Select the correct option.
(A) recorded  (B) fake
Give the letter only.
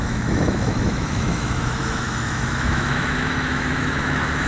B